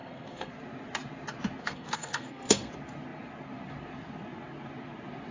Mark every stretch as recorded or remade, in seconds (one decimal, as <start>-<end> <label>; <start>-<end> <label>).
0.0-0.5 remade; 0.5-1.6 recorded; 1.6-2.7 remade; 2.7-5.3 recorded